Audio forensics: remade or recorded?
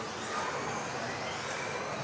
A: recorded